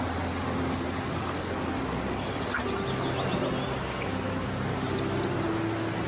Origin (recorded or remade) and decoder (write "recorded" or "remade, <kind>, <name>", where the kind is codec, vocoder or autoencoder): recorded